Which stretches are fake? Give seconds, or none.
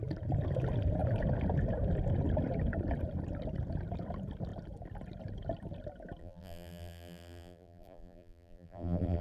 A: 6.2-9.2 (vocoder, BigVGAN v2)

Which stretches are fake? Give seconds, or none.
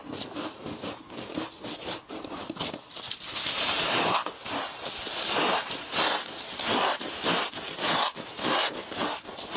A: none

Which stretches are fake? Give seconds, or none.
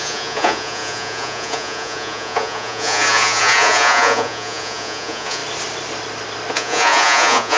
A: 0.0-5.4 (vocoder, Vocos); 6.5-7.6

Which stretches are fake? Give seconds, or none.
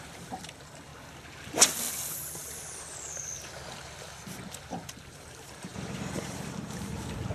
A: 0.0-0.9 (vocoder, BigVGAN v2); 5.1-7.3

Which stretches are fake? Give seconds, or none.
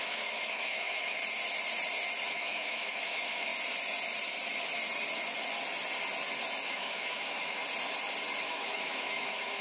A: 0.0-1.2 (autoencoder, DAC-VAE); 2.3-3.5; 6.7-7.6; 8.4-9.6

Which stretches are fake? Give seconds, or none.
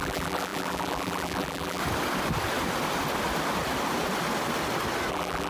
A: 0.0-1.8 (vocoder, BigVGAN v2); 5.1-5.5